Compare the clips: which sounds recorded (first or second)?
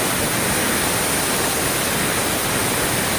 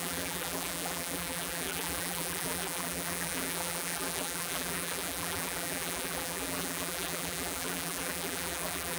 first